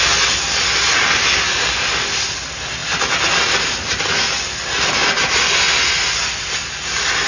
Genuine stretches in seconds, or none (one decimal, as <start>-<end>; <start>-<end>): 0.0-7.3